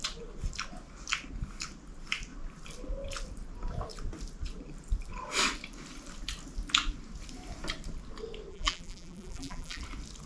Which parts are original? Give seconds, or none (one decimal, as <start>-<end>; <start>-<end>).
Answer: 0.0-8.5; 9.8-10.3